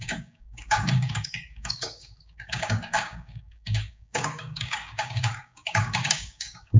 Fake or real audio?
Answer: fake